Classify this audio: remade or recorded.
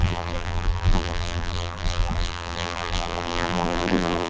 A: remade